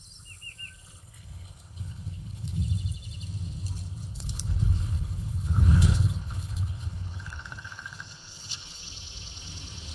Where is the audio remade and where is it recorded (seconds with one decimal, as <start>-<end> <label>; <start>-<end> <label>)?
0.0-1.0 recorded; 1.0-2.6 remade; 2.6-4.1 recorded; 4.1-8.8 remade; 8.8-9.9 recorded